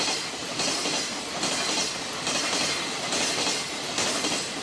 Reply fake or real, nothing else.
real